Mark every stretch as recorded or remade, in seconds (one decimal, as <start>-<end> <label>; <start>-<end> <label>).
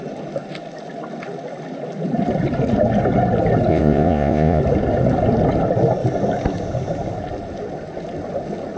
0.0-3.7 recorded; 3.7-4.6 remade; 4.6-8.8 recorded